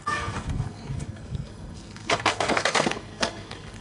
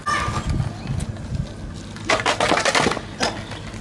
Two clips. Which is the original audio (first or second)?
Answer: second